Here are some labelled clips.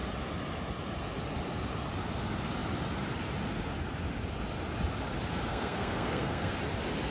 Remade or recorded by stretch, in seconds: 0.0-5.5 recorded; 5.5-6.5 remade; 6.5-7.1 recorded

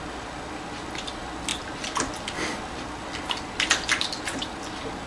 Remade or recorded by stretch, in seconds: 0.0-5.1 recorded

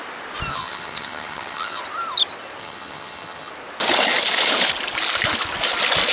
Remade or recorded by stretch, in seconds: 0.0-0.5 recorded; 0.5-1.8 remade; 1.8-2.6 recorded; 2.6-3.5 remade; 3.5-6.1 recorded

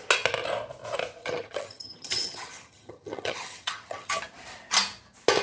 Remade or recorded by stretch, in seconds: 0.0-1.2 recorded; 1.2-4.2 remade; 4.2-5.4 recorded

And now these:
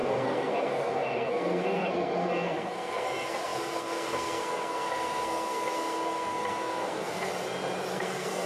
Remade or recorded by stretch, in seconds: 0.0-7.3 remade; 7.3-7.9 recorded; 7.9-8.5 remade

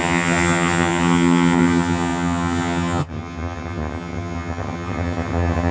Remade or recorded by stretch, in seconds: 0.0-5.7 remade

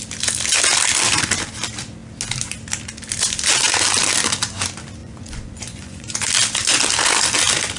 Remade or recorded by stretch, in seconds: 0.0-5.0 recorded; 5.0-6.3 remade; 6.3-7.8 recorded